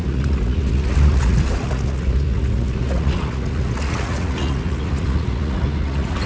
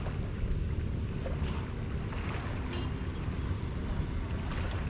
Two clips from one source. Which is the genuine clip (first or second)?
second